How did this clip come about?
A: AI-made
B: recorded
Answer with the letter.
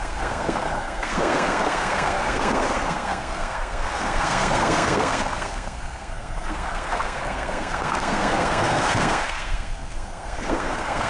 A